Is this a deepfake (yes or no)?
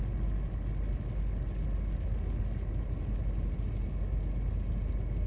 no